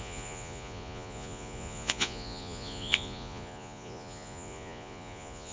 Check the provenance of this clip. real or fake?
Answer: fake